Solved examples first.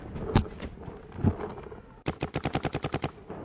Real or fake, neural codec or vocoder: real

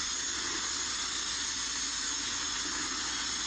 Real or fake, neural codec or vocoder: real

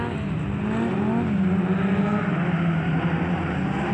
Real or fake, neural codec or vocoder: real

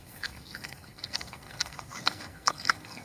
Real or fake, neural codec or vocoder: fake, codec, SNAC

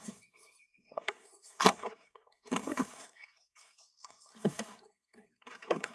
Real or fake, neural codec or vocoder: fake, codec, SNAC